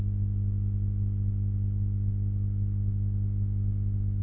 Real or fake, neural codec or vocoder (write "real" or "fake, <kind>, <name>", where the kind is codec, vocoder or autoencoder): real